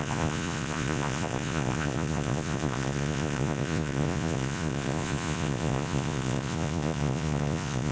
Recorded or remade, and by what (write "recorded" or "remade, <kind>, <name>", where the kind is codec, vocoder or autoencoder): remade, vocoder, Vocos